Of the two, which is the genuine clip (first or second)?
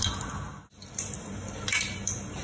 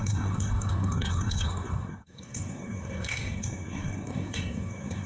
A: first